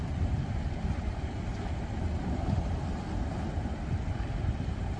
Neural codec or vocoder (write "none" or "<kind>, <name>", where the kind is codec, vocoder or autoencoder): none